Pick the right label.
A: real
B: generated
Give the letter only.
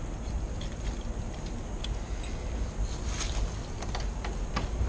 A